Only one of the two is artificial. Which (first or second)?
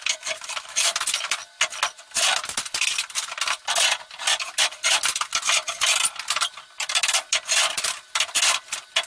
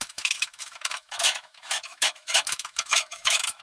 second